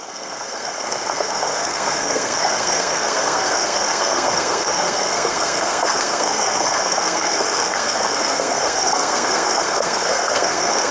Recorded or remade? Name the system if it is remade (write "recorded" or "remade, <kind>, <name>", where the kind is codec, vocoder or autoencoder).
remade, codec, SNAC